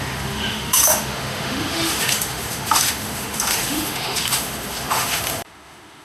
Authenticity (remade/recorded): remade